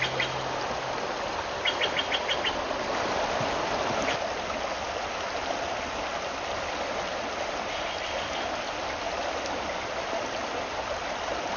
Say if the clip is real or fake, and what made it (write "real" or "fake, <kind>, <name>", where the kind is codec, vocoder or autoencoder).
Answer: real